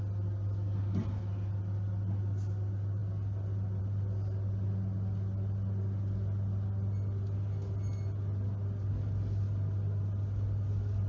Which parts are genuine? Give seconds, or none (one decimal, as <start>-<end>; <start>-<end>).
0.0-11.1